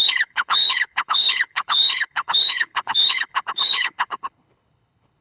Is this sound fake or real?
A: fake